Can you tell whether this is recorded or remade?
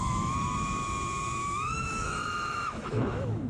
remade